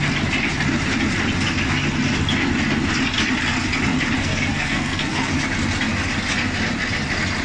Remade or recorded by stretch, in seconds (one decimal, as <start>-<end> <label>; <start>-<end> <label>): 0.0-4.2 recorded; 4.2-5.3 remade; 5.3-7.4 recorded